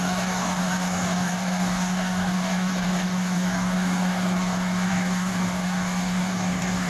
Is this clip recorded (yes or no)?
no